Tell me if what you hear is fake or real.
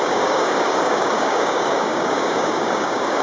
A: fake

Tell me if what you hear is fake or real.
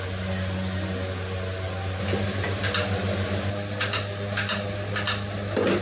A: real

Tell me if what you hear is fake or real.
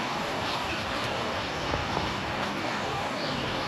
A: fake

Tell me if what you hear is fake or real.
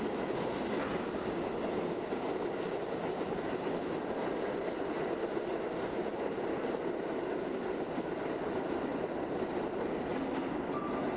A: real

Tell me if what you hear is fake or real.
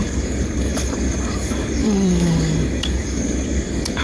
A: fake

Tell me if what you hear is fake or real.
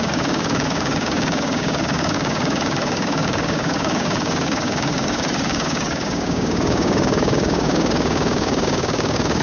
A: fake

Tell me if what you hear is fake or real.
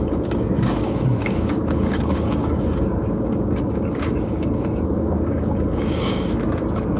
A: fake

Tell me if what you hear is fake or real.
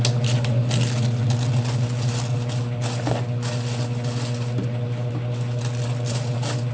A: real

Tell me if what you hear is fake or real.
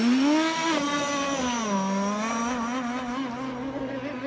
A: real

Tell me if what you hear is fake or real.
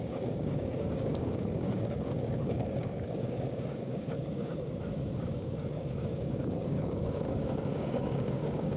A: fake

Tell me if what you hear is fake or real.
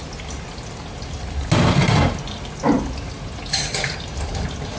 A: real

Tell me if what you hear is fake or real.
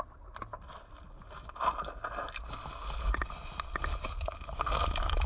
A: real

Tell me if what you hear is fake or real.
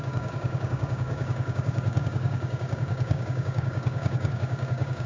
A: fake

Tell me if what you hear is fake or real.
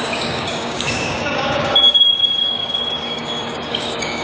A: fake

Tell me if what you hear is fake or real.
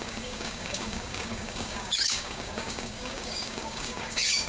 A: fake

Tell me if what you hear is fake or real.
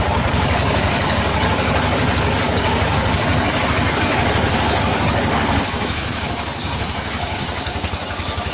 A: fake